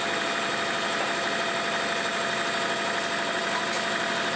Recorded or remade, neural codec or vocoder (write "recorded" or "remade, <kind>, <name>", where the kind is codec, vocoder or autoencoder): recorded